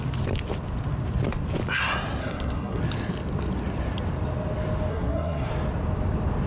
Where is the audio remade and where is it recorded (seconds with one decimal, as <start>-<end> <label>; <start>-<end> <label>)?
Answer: 0.0-2.2 recorded; 2.2-2.8 remade; 2.8-4.9 recorded; 4.9-5.5 remade; 5.5-6.5 recorded